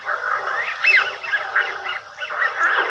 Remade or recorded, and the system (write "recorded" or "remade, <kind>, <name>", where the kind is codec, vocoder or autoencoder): recorded